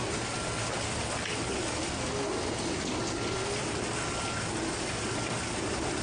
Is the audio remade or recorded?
recorded